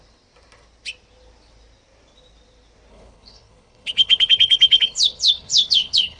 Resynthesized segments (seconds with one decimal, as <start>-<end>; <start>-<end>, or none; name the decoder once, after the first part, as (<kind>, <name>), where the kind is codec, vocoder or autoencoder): 2.9-6.2 (codec, HILCodec)